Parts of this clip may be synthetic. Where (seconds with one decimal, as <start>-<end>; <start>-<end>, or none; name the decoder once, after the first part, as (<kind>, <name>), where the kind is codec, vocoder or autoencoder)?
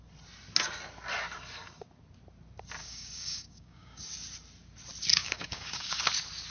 2.8-4.0 (codec, DAC); 5.1-6.0